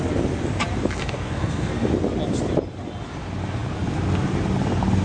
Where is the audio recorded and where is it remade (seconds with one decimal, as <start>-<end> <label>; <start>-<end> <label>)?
0.0-1.0 recorded; 1.0-1.9 remade; 1.9-5.0 recorded